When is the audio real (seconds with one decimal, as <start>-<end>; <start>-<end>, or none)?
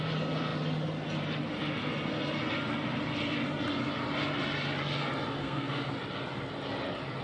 0.0-5.4; 5.9-7.2